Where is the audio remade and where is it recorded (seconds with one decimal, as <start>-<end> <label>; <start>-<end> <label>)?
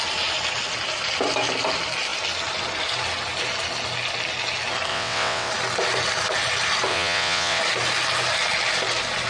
0.0-4.9 recorded; 4.9-5.5 remade; 5.5-6.9 recorded; 6.9-7.6 remade; 7.6-9.3 recorded